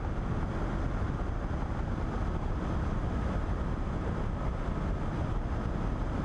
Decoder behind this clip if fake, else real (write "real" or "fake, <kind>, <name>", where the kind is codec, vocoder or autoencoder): real